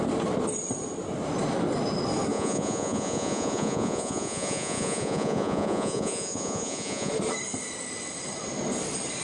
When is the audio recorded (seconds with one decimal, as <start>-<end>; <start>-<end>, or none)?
0.0-2.3; 7.1-9.2